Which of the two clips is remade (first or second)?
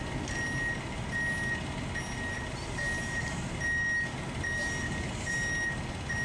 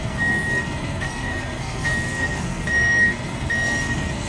second